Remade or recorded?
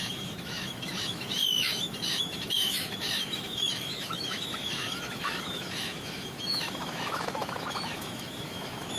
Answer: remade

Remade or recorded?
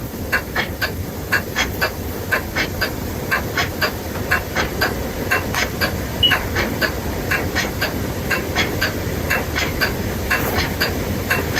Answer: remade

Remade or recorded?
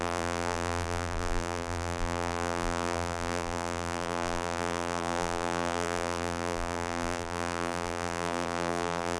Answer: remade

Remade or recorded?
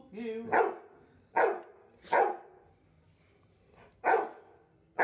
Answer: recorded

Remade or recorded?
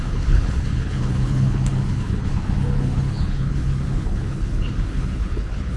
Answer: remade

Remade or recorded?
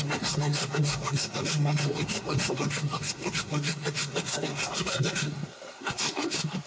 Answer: remade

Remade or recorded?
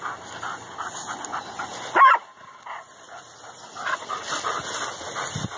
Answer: recorded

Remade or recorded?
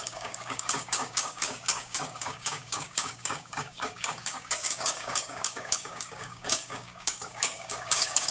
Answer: remade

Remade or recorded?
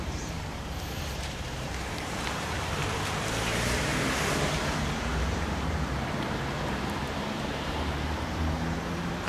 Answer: remade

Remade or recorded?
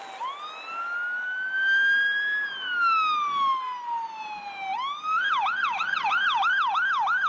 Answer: recorded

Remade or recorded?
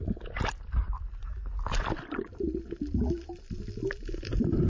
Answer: recorded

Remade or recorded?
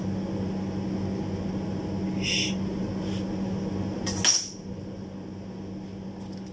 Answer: recorded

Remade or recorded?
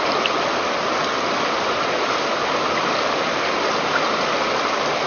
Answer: recorded